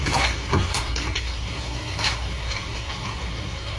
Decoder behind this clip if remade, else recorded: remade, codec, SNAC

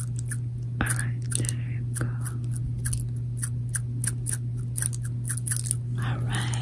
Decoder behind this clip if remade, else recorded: recorded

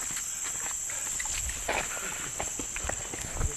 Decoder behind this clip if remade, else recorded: recorded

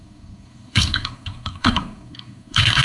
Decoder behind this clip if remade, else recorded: remade, codec, SNAC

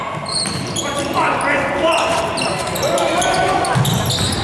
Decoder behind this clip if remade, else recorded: recorded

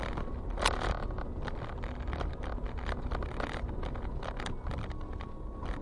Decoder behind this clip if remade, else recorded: recorded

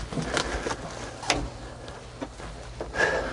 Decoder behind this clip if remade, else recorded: recorded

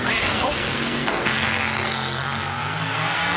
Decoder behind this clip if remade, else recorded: remade, codec, SNAC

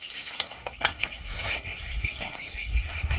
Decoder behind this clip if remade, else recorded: remade, codec, SNAC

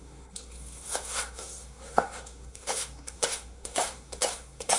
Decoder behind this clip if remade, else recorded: remade, codec, SNAC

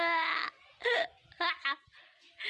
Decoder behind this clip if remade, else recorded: recorded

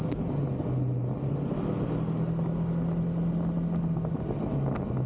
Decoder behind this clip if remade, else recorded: recorded